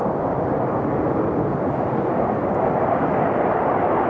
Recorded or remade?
remade